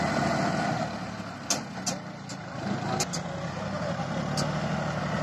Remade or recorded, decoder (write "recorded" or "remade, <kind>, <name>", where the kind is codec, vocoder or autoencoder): recorded